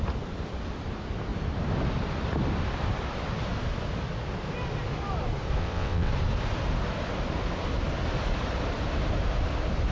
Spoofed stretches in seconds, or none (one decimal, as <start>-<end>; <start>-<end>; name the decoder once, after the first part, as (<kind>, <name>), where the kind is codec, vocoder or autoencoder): 5.6-6.1 (vocoder, WaveNeXt)